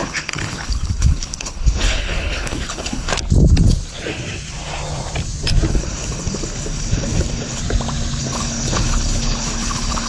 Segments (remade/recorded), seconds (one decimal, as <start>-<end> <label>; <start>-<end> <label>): 0.0-3.1 remade; 3.1-5.7 recorded; 5.7-7.6 remade; 7.6-8.2 recorded; 8.2-10.1 remade